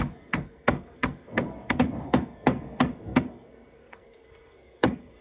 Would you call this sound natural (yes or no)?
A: no